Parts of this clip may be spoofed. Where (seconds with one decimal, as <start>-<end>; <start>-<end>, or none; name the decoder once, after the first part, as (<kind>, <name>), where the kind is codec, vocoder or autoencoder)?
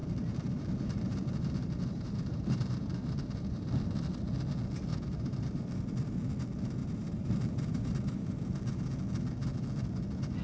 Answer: 0.0-4.3 (vocoder, BigVGAN v2); 4.9-5.8; 6.8-8.9